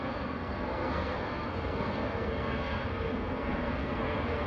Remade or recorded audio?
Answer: remade